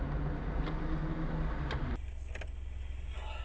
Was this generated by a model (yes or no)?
no